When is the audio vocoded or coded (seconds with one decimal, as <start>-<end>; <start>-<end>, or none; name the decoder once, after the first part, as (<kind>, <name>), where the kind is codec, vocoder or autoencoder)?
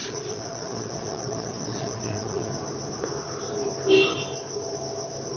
0.0-2.5 (vocoder, Vocos)